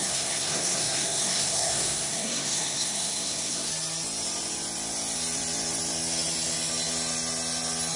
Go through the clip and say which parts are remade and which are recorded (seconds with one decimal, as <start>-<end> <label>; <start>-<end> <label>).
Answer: 0.0-3.7 remade; 3.7-8.0 recorded